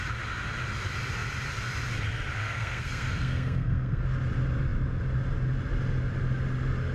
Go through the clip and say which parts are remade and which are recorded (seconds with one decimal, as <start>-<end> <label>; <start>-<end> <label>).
0.0-2.4 recorded; 2.4-4.0 remade; 4.0-6.9 recorded